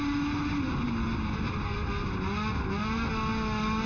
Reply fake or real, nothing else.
real